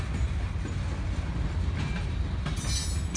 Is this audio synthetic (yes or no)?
no